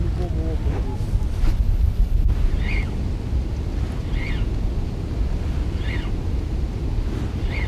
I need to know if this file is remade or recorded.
recorded